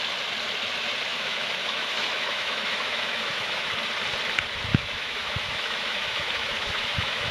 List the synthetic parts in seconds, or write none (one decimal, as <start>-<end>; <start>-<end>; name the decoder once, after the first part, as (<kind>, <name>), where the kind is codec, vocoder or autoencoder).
1.1-3.7 (autoencoder, DAC-VAE); 4.7-7.3